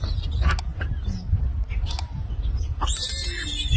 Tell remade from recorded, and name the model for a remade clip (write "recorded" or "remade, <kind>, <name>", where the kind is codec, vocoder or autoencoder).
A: recorded